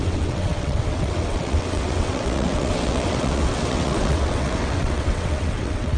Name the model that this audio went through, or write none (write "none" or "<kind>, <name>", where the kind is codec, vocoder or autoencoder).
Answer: vocoder, WaveNeXt